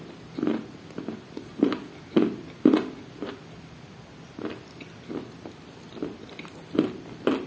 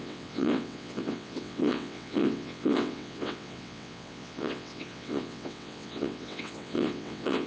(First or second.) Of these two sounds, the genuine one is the first